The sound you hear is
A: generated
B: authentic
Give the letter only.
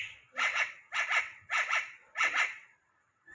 A